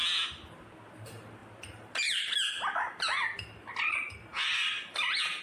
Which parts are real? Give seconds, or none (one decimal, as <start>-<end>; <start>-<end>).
0.0-5.4